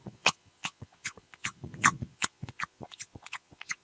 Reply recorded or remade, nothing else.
remade